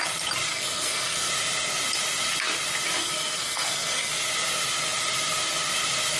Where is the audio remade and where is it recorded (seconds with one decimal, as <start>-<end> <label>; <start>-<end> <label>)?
0.0-0.5 recorded; 0.5-1.3 remade; 1.3-3.0 recorded; 3.0-4.1 remade; 4.1-6.2 recorded